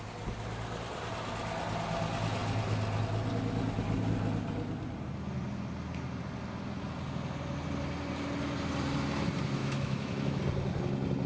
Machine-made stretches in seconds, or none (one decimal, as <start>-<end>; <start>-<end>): 9.6-10.4